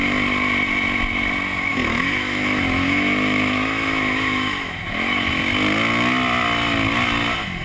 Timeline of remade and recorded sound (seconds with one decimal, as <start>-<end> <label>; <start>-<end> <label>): 0.0-1.7 recorded; 1.7-5.3 remade; 5.3-7.6 recorded